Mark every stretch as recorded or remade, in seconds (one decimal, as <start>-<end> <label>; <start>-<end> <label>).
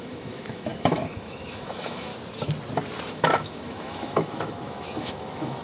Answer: 0.0-2.1 remade; 2.1-3.1 recorded; 3.1-5.6 remade